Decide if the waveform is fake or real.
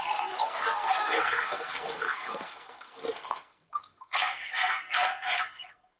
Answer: fake